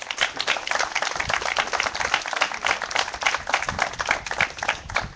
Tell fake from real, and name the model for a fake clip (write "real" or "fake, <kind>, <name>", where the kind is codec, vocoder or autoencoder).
real